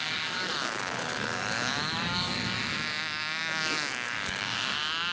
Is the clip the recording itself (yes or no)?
no